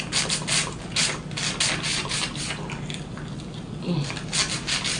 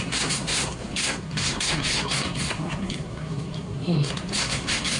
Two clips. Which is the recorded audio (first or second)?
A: first